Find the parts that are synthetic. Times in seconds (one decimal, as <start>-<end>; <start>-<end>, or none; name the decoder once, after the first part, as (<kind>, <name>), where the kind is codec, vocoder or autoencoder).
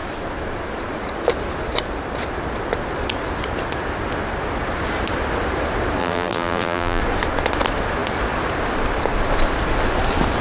6.0-7.0 (vocoder, BigVGAN v2)